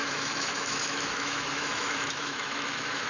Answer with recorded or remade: remade